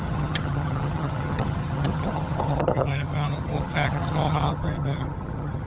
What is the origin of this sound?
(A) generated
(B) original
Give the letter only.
A